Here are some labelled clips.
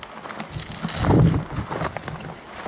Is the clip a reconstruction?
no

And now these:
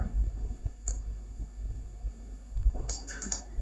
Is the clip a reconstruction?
yes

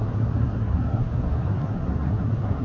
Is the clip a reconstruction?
yes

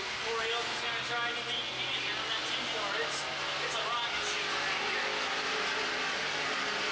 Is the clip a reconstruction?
no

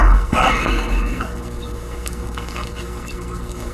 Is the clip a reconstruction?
yes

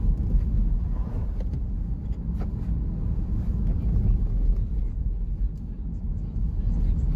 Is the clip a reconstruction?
no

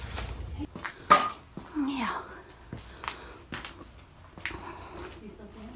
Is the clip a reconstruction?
no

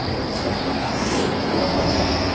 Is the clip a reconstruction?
yes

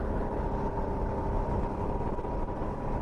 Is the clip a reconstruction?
no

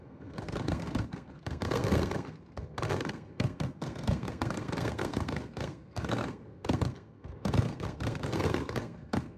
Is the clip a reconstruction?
yes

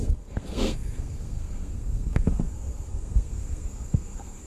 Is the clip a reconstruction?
yes